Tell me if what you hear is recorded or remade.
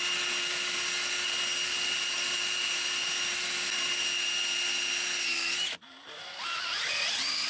recorded